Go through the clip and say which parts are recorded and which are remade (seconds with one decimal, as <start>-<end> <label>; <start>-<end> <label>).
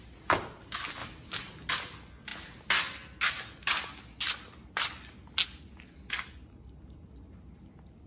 0.0-8.1 recorded